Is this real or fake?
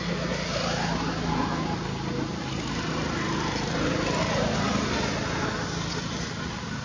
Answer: real